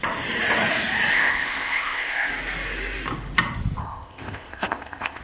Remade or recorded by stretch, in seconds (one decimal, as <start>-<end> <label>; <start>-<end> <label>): 0.0-1.1 recorded; 1.1-2.3 remade; 2.3-3.8 recorded; 3.8-5.2 remade

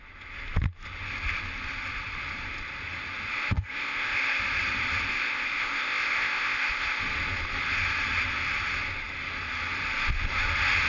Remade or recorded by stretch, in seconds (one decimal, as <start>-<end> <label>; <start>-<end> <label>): 0.0-3.3 recorded; 3.3-4.4 remade; 4.4-5.1 recorded; 5.1-7.0 remade; 7.0-10.9 recorded

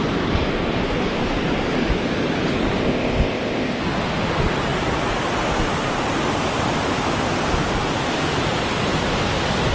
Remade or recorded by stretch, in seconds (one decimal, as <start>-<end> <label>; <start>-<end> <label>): 0.0-2.8 recorded; 2.8-3.8 remade; 3.8-9.7 recorded

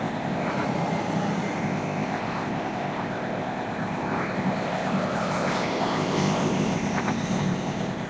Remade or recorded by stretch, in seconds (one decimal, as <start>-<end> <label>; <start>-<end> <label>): 0.0-0.5 remade; 0.5-1.6 recorded; 1.6-8.1 remade

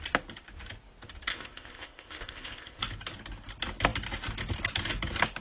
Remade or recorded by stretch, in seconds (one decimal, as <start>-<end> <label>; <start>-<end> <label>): 0.0-1.3 recorded; 1.3-2.8 remade; 2.8-5.4 recorded

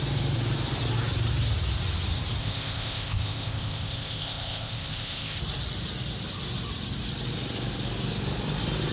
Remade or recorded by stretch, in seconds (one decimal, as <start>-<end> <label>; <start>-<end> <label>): 0.0-2.4 recorded; 2.4-5.4 remade; 5.4-8.9 recorded

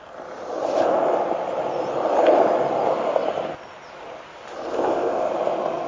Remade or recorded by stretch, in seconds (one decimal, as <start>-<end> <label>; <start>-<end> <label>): 0.0-4.7 recorded; 4.7-5.3 remade; 5.3-5.9 recorded

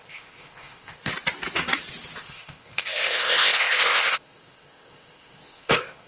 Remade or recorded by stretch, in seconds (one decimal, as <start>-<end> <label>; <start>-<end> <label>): 0.0-1.1 remade; 1.1-2.2 recorded; 2.2-6.1 remade